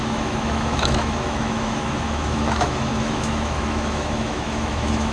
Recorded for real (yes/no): no